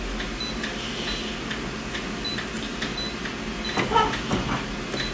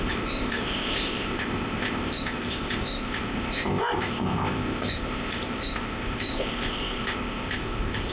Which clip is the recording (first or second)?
first